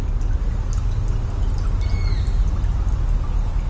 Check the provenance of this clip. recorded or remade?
recorded